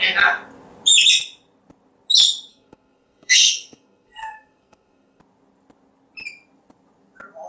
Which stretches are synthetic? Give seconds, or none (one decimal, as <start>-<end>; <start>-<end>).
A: 2.5-5.2